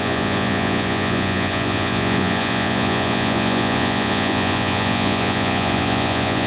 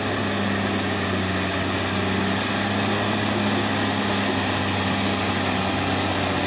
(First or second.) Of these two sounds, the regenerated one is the first